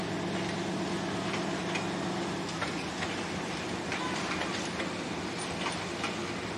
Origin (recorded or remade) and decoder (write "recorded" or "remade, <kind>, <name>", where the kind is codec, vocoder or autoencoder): recorded